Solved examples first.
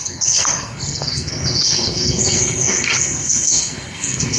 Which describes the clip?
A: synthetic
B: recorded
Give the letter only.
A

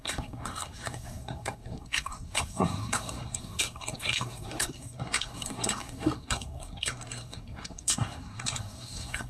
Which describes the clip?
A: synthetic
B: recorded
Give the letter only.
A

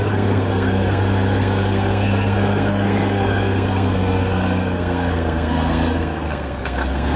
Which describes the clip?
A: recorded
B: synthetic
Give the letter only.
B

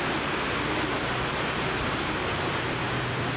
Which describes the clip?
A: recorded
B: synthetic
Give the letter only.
A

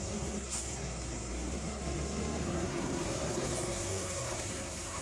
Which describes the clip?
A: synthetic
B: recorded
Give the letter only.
A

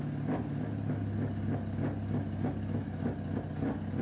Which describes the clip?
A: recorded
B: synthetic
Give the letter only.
A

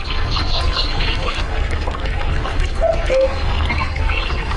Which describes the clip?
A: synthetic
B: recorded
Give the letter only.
A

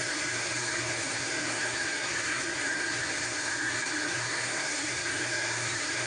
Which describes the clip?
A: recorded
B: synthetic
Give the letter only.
B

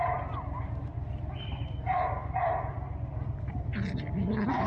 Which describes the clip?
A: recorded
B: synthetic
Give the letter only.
A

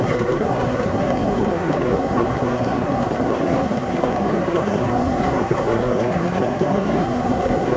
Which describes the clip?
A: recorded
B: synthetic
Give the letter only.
B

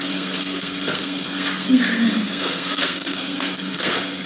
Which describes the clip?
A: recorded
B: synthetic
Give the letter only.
B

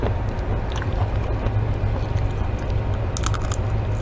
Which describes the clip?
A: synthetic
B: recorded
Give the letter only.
B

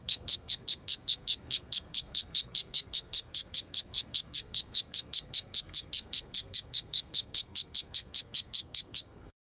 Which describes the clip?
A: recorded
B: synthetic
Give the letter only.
B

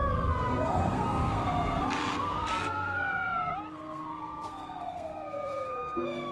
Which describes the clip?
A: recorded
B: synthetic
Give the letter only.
B